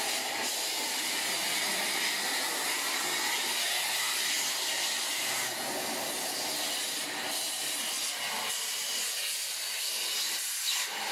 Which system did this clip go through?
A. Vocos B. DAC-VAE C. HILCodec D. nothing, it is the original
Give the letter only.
D